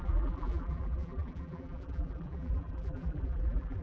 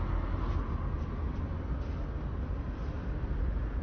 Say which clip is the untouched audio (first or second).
second